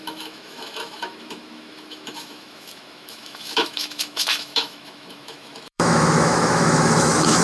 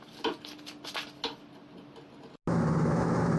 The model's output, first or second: first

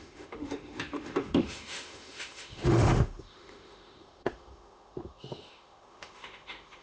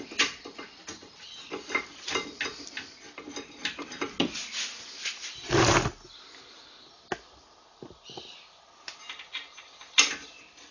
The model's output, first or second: first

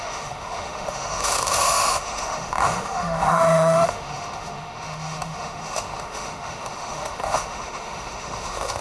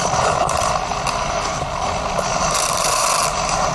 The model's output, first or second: first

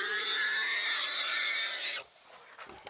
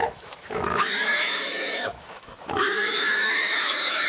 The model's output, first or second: second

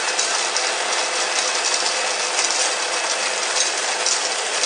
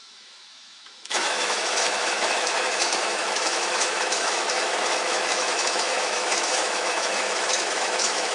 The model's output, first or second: second